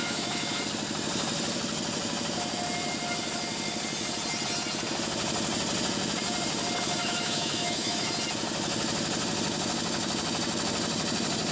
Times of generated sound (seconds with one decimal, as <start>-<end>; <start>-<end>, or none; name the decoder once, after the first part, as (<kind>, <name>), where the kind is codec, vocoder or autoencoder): 0.0-0.6 (autoencoder, DAC-VAE); 7.0-8.1